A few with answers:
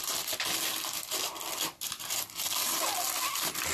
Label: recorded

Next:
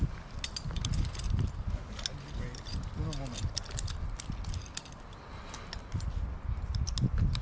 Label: recorded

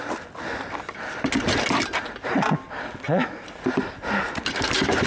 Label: recorded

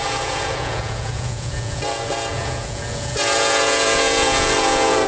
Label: remade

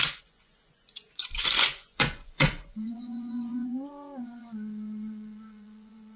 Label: remade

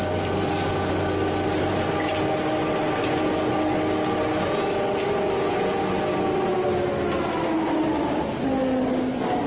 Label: recorded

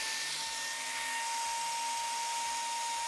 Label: recorded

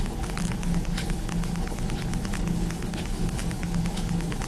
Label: remade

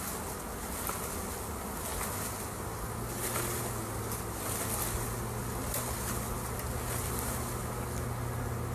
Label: recorded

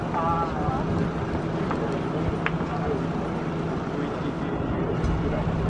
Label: recorded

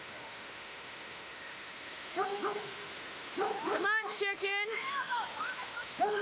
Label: remade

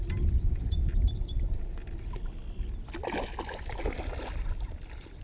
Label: recorded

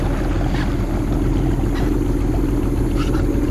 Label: recorded